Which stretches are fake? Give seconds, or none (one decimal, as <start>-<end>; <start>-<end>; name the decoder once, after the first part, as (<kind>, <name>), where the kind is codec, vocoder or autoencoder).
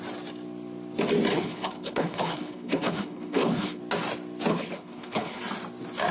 1.3-3.8 (codec, HILCodec); 4.5-5.4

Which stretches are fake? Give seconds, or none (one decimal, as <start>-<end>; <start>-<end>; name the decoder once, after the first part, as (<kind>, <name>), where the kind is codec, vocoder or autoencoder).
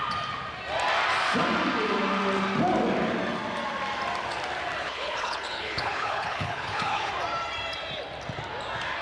4.8-7.1 (codec, HILCodec)